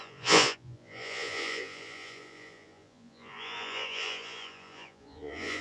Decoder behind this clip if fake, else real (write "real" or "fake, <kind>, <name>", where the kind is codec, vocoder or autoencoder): fake, vocoder, Vocos